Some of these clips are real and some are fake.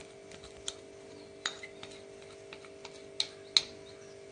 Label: real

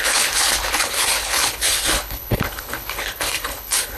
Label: fake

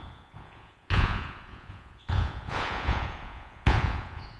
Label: fake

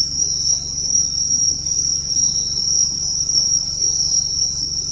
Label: real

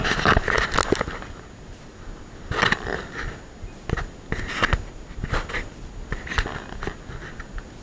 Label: real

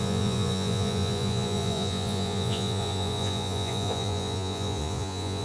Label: fake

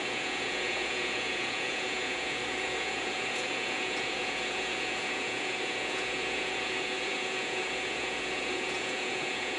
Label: fake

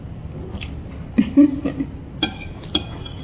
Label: real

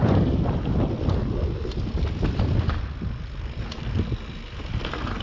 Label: real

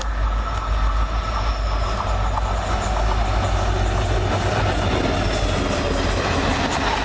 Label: real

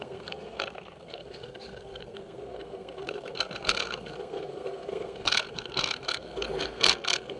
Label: fake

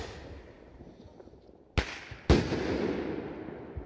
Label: real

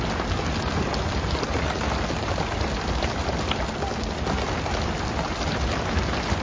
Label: real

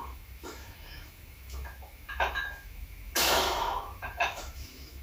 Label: fake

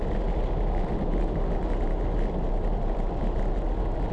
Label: real